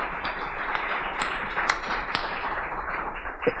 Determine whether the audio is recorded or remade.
remade